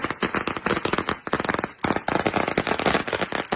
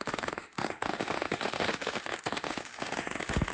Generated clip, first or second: second